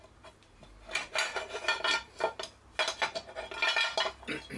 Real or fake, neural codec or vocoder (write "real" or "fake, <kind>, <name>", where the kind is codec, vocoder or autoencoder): real